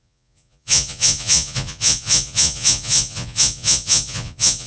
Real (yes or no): no